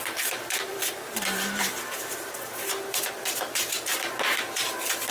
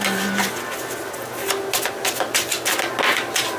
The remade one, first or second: first